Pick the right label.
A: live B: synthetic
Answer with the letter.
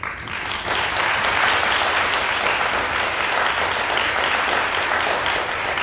A